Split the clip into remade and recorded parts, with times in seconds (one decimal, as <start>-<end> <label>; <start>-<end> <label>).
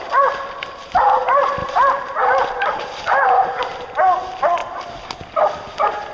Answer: 0.0-1.6 recorded; 1.6-3.6 remade; 3.6-6.1 recorded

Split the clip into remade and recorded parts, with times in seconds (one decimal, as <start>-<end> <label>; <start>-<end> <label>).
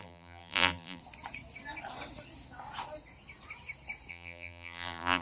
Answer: 0.0-1.0 remade; 1.0-4.1 recorded; 4.1-5.2 remade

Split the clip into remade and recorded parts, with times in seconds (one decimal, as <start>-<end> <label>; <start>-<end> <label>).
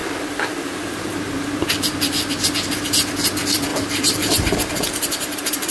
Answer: 0.0-3.7 recorded; 3.7-5.7 remade